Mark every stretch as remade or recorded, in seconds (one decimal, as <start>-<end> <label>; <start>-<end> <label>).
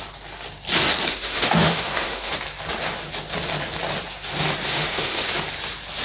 0.0-1.1 recorded; 1.1-2.3 remade; 2.3-4.7 recorded; 4.7-5.3 remade; 5.3-6.0 recorded